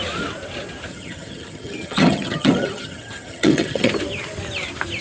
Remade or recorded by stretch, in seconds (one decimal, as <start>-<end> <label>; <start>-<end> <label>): 0.0-0.9 recorded; 0.9-3.9 remade; 3.9-5.0 recorded